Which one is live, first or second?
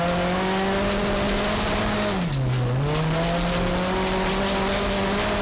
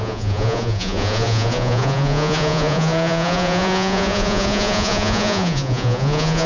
first